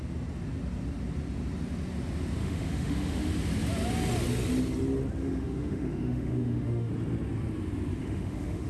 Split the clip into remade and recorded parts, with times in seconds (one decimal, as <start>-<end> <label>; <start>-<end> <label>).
0.0-2.4 recorded; 2.4-3.3 remade; 3.3-5.2 recorded; 5.2-6.9 remade; 6.9-8.0 recorded; 8.0-8.7 remade